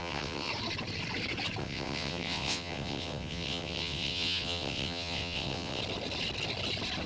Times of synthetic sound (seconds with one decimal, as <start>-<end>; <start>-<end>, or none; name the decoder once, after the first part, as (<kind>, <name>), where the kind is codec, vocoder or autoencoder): 0.0-0.5 (vocoder, WaveNeXt); 1.6-5.8